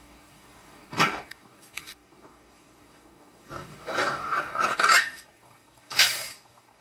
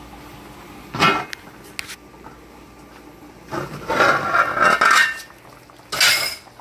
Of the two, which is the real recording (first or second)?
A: second